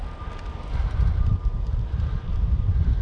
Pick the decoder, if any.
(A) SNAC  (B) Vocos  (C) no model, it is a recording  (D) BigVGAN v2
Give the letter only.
C